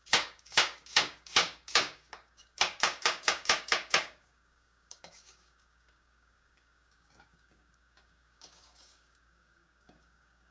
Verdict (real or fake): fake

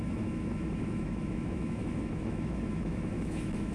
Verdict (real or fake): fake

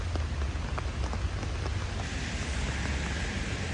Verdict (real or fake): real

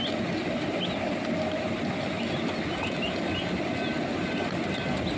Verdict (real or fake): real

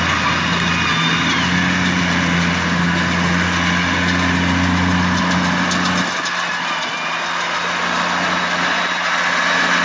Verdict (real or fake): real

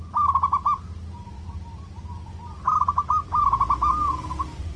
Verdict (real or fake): real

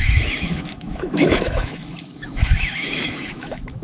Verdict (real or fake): fake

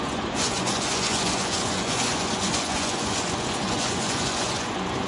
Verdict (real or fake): fake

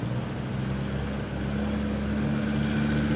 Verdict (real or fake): real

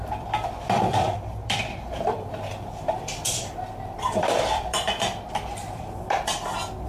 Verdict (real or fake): fake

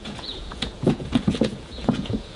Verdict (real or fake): fake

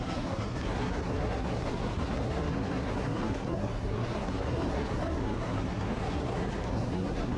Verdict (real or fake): fake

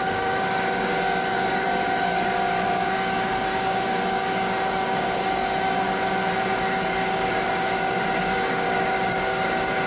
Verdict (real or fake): fake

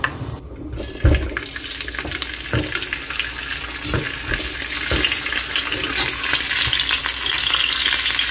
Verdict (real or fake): real